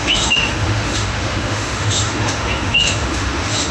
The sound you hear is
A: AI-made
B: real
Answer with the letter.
A